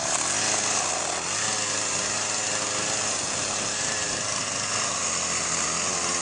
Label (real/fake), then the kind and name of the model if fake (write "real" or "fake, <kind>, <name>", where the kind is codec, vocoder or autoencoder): real